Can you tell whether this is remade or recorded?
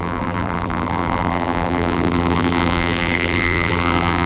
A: remade